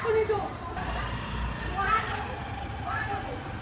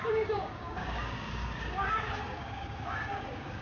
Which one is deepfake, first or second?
second